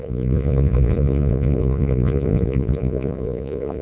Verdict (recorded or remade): remade